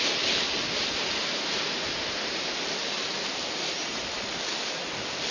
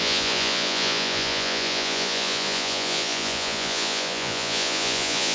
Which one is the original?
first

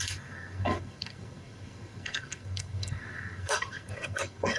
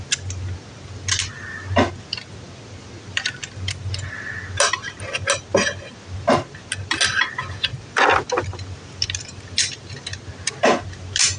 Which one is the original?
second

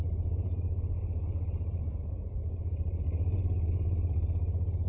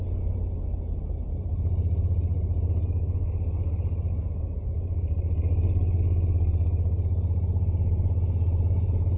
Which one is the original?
second